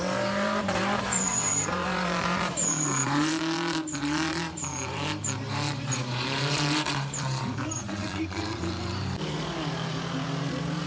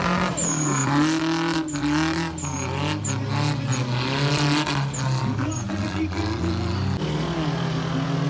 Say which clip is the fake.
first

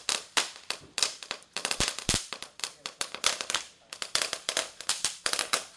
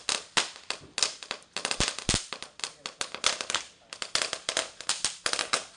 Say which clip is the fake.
first